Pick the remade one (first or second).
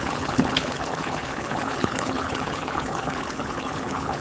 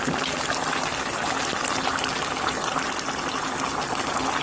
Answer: first